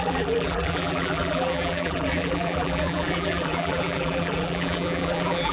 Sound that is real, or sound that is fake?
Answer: fake